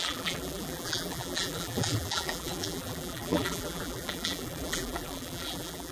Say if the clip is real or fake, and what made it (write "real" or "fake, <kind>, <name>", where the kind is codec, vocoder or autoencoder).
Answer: fake, vocoder, BigVGAN v2